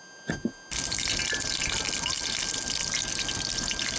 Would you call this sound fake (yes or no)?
no